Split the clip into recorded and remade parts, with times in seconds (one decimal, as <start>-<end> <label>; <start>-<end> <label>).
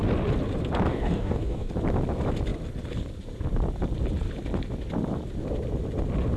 0.0-0.9 recorded; 0.9-1.7 remade; 1.7-6.4 recorded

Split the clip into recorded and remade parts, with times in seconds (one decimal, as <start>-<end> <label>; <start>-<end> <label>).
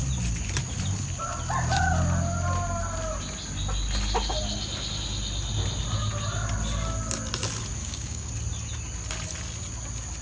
0.0-7.8 recorded; 7.8-8.3 remade; 8.3-10.2 recorded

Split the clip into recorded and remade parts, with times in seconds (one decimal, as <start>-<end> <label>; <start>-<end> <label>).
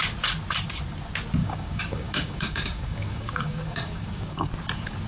0.0-1.4 recorded; 1.4-4.5 remade; 4.5-5.1 recorded